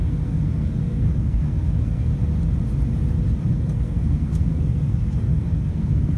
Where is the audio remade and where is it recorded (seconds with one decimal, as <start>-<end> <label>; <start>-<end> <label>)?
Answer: 0.0-2.1 remade; 2.1-3.5 recorded; 3.5-6.2 remade